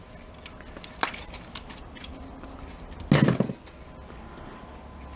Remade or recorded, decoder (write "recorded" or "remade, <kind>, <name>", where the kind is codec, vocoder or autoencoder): recorded